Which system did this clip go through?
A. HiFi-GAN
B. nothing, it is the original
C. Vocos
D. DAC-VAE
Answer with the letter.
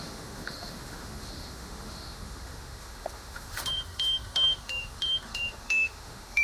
D